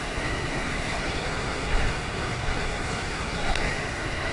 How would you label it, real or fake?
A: fake